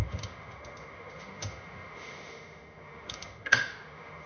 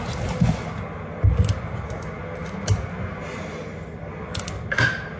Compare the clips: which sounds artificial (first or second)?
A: first